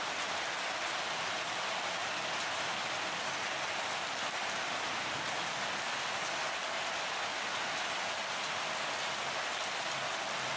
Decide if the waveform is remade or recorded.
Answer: recorded